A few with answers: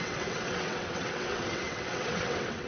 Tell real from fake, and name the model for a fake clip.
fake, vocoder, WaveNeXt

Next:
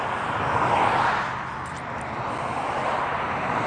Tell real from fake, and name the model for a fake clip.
real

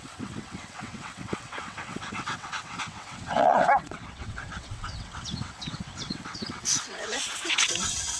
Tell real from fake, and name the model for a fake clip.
fake, vocoder, WaveNeXt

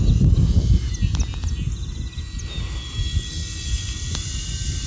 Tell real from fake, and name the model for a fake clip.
real